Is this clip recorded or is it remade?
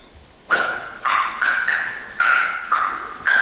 remade